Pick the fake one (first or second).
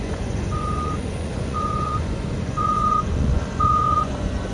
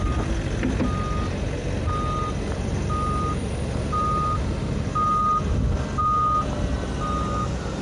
first